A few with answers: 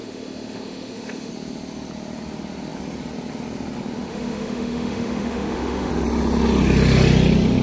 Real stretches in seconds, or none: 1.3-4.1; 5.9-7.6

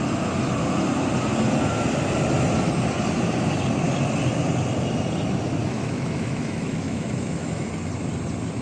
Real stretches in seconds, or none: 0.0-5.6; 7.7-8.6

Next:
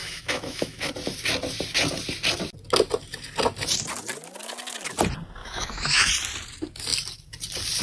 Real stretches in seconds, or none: 0.9-5.4; 6.1-7.8